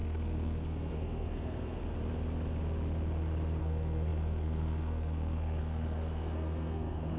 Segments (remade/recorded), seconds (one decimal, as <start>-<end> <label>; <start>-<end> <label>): 0.0-1.8 remade; 1.8-3.6 recorded; 3.6-7.2 remade